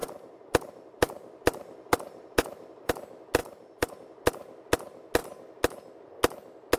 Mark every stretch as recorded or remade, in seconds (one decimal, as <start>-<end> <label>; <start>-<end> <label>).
0.0-2.9 remade; 2.9-3.4 recorded; 3.4-3.9 remade; 3.9-6.8 recorded